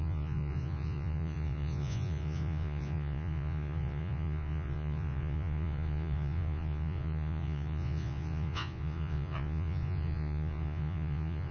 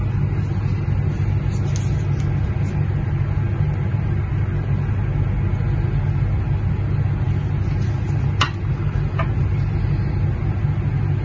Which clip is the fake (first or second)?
first